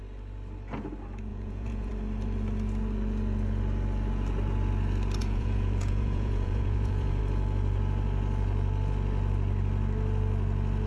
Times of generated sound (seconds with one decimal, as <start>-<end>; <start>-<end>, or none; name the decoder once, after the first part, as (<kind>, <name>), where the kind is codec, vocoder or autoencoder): 1.3-1.9 (vocoder, Vocos); 5.2-7.2